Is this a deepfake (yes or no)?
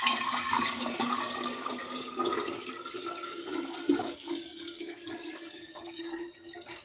yes